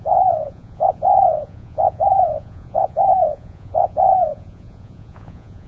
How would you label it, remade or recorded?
remade